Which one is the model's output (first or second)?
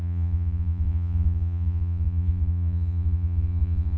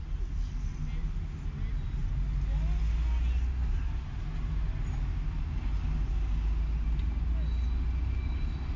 first